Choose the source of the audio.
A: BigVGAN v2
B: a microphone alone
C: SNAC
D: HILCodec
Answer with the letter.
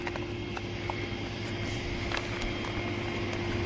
B